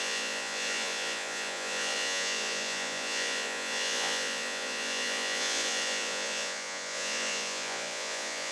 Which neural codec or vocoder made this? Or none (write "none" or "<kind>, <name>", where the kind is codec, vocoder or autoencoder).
vocoder, Vocos